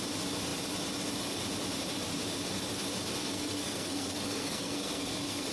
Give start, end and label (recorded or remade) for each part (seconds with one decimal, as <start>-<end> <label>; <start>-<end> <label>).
0.0-3.2 recorded; 3.2-5.5 remade